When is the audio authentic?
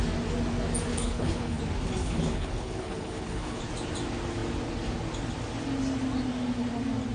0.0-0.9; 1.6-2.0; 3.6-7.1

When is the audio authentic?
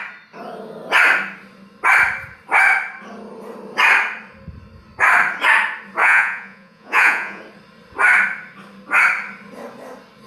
0.0-6.0; 7.4-10.3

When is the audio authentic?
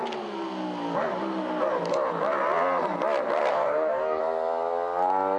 0.0-3.5; 4.2-5.4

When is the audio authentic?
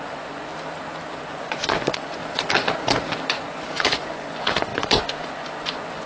0.5-1.2; 2.2-3.3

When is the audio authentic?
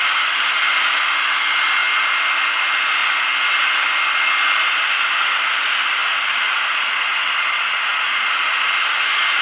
0.0-9.4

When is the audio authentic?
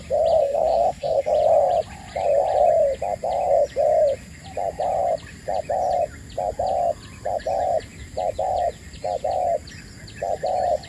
0.0-0.4; 1.3-10.9